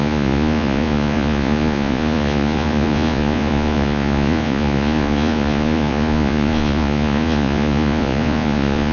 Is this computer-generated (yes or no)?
yes